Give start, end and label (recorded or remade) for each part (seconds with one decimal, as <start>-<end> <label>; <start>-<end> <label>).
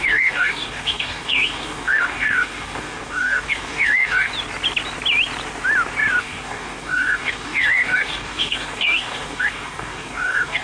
0.0-4.3 remade; 4.3-6.2 recorded; 6.2-10.6 remade